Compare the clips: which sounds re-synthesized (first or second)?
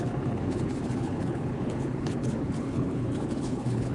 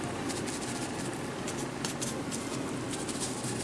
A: first